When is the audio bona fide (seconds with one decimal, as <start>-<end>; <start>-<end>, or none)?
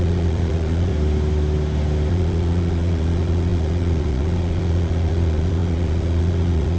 0.9-2.1